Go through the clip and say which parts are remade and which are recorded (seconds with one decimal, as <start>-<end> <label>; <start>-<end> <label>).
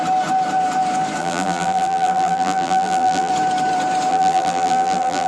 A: 0.0-1.2 recorded; 1.2-3.3 remade; 3.3-4.1 recorded; 4.1-5.3 remade